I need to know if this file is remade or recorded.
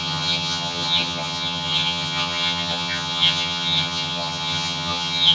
remade